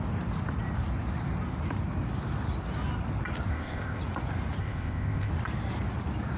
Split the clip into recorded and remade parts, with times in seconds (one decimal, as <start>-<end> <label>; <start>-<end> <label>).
0.0-3.5 recorded; 3.5-4.0 remade; 4.0-4.6 recorded; 4.6-5.3 remade; 5.3-6.4 recorded